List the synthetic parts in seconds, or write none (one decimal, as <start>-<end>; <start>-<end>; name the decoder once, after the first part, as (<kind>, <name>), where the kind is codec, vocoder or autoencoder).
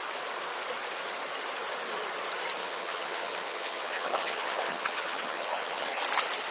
2.6-6.0 (vocoder, HiFi-GAN)